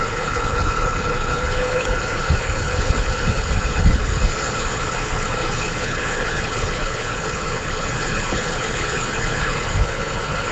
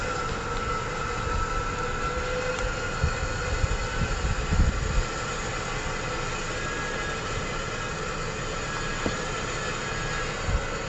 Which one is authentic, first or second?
second